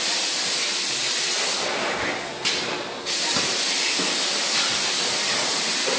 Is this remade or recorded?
recorded